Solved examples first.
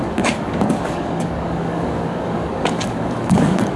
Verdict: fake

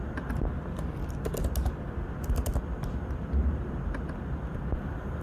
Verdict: real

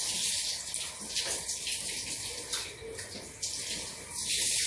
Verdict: real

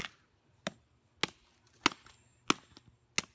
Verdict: real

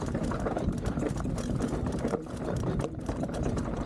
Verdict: fake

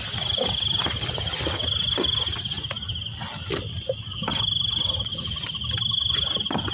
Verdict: real